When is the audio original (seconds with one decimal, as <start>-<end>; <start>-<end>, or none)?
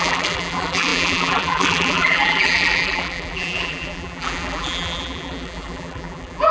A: none